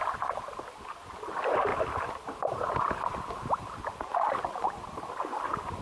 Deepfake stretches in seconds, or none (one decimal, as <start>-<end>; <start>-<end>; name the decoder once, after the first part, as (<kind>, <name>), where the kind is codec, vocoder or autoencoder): none